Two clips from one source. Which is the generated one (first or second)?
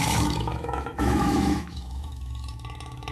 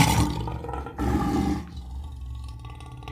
first